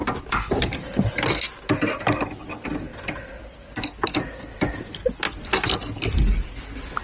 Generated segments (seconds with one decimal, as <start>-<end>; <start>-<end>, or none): none